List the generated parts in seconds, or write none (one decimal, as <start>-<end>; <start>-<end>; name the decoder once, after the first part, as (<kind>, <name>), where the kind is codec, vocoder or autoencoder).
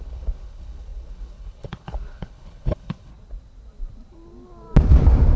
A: 0.0-3.1 (codec, HILCodec)